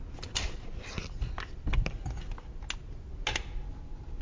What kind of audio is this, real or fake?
real